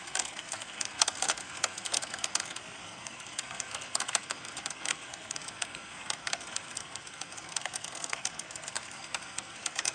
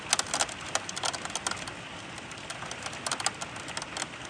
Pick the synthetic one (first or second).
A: first